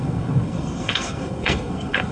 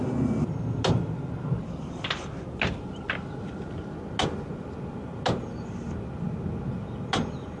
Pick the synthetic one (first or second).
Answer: first